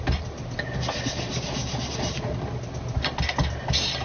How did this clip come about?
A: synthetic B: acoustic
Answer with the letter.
B